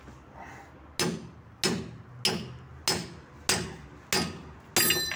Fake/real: real